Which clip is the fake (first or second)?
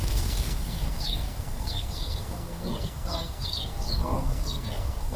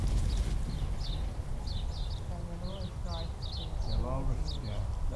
first